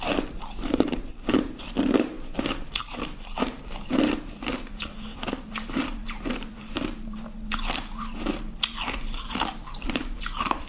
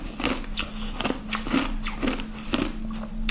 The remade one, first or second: first